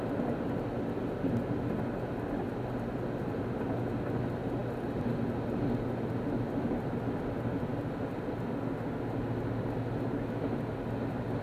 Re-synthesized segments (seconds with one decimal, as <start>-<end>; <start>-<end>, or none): none